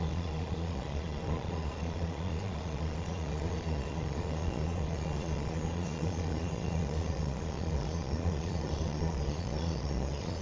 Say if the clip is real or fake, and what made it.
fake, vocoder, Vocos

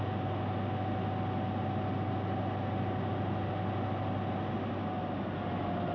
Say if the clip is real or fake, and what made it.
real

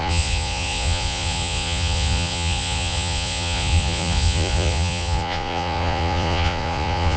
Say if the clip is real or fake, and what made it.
fake, vocoder, Vocos